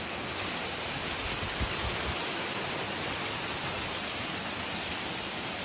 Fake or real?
real